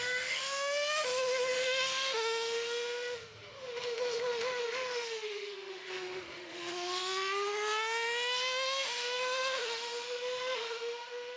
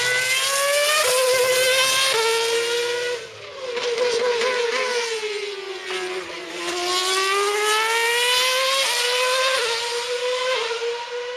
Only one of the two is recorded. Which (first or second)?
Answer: second